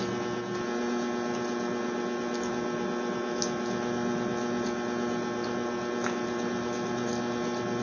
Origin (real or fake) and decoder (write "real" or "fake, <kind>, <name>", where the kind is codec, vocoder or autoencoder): real